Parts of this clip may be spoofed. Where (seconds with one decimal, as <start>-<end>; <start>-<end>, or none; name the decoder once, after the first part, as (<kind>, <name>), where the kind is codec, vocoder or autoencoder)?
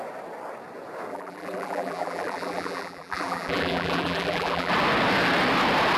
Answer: 1.1-4.7 (vocoder, BigVGAN v2)